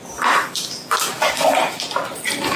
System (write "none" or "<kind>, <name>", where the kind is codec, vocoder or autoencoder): vocoder, BigVGAN v2